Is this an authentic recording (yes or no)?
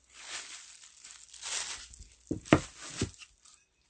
yes